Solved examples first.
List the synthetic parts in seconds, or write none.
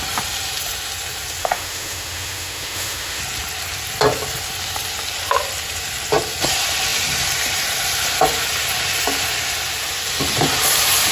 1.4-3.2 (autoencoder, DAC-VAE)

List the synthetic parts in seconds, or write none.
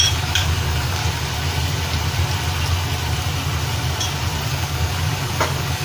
0.0-1.0 (codec, DAC); 4.5-5.8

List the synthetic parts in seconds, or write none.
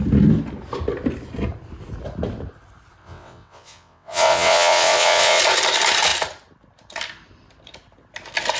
3.0-5.4 (vocoder, WaveNeXt)